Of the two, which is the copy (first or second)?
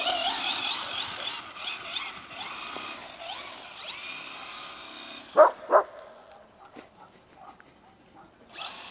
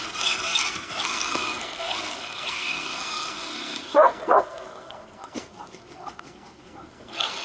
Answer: second